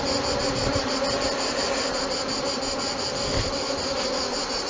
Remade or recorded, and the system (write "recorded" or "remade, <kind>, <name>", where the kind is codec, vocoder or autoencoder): recorded